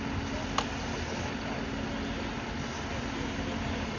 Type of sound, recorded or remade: recorded